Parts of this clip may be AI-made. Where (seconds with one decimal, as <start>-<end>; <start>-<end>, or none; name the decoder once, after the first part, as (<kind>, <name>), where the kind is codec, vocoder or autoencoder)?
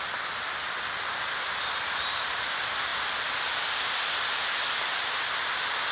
none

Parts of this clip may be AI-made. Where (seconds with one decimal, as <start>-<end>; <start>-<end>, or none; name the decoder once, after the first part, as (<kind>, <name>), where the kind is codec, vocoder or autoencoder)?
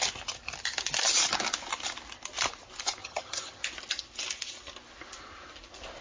3.0-3.6 (vocoder, HiFi-GAN)